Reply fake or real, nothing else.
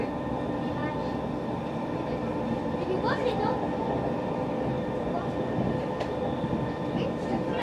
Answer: real